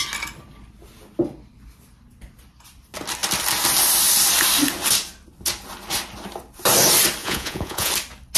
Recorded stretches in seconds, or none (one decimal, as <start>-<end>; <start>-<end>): 0.0-7.2; 7.9-8.4